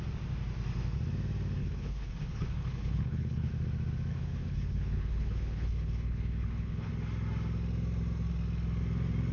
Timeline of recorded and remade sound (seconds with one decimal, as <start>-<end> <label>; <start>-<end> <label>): 0.0-1.6 recorded; 1.6-3.5 remade; 3.5-4.1 recorded; 4.1-6.9 remade; 6.9-9.3 recorded